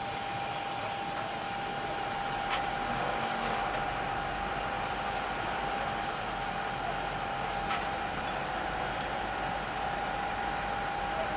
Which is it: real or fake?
real